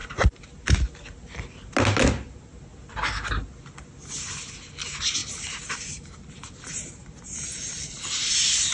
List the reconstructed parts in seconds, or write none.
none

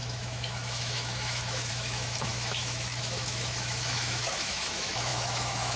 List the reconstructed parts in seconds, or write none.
0.0-5.8 (autoencoder, DAC-VAE)